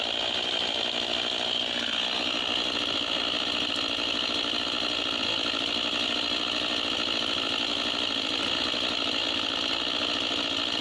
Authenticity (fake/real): real